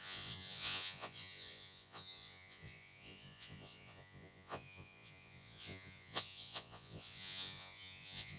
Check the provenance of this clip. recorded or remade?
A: remade